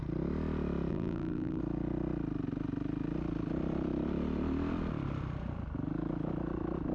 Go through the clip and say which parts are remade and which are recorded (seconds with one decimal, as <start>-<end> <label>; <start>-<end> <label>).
0.0-0.9 recorded; 0.9-1.6 remade; 1.6-6.9 recorded